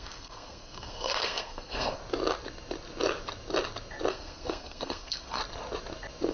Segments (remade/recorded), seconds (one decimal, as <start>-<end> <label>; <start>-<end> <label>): 0.0-2.0 remade; 2.0-4.1 recorded; 4.1-5.4 remade; 5.4-6.3 recorded